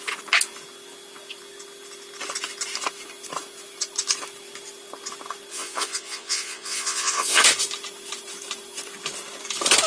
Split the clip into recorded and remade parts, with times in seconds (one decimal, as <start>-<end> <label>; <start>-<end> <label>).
0.0-5.5 recorded; 5.5-7.4 remade; 7.4-9.9 recorded